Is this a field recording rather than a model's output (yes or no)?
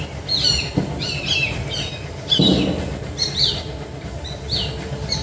yes